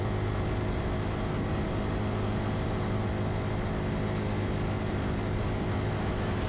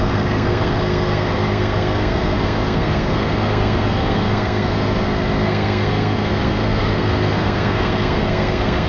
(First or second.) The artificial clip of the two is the second